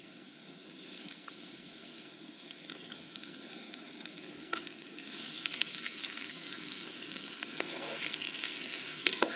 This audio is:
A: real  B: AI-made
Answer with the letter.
B